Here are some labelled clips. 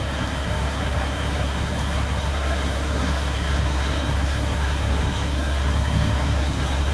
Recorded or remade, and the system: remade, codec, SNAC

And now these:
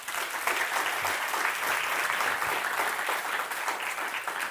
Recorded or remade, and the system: recorded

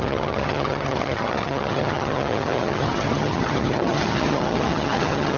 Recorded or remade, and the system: remade, vocoder, HiFi-GAN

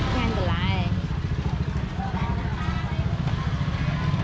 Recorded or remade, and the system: recorded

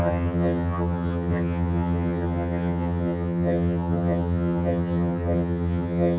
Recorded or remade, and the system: remade, vocoder, HiFi-GAN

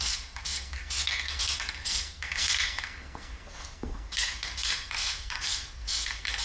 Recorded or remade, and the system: remade, codec, SNAC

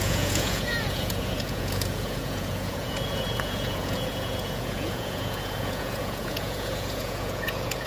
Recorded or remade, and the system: remade, vocoder, Vocos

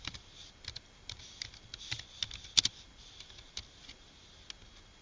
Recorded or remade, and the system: recorded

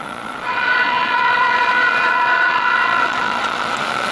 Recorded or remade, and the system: remade, vocoder, Vocos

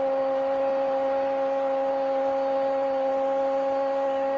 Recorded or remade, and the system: recorded